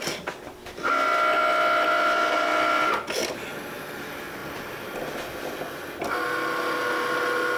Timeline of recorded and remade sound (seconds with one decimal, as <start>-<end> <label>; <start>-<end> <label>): 0.0-7.6 recorded